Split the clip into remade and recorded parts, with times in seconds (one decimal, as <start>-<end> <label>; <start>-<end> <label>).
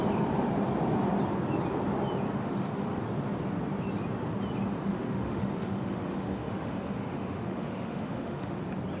0.0-2.4 recorded; 2.4-3.0 remade; 3.0-4.9 recorded; 4.9-8.6 remade; 8.6-9.0 recorded